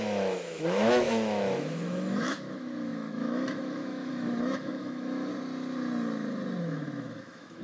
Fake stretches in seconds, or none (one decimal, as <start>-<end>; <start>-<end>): 0.0-5.3; 6.6-7.6